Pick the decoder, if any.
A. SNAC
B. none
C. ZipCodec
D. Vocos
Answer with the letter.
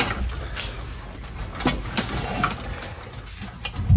B